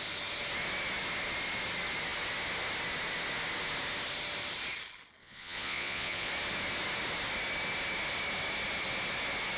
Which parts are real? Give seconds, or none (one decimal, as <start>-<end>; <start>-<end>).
0.0-5.2; 6.3-9.6